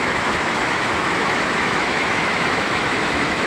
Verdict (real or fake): fake